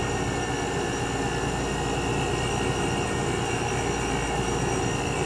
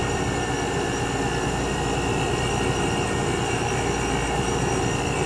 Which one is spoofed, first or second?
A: second